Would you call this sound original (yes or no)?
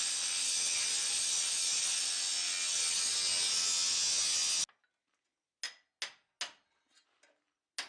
yes